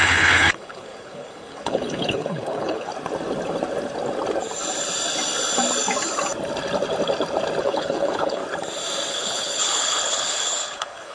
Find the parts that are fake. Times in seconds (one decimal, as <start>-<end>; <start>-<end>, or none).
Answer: 0.0-2.9; 7.6-8.4; 9.1-11.1